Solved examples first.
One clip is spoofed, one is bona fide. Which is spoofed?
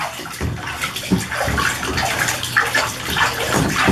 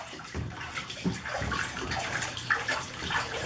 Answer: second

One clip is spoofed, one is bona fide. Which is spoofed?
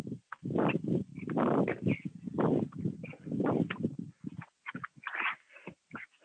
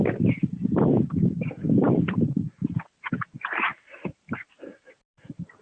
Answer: second